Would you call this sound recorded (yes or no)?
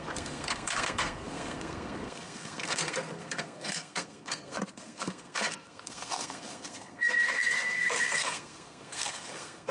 no